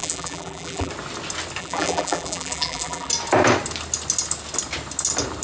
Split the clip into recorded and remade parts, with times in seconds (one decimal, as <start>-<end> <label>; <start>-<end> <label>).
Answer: 0.0-0.9 remade; 0.9-1.6 recorded; 1.6-3.1 remade; 3.1-5.4 recorded

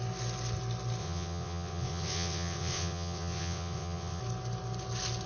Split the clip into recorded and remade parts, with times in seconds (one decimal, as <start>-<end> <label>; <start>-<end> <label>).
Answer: 0.0-1.0 recorded; 1.0-4.2 remade; 4.2-5.3 recorded